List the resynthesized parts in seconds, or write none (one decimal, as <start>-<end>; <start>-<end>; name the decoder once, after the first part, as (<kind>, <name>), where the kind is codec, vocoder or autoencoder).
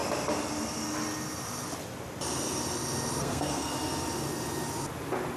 3.2-3.7 (codec, SNAC)